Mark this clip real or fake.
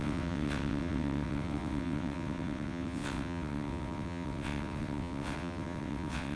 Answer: fake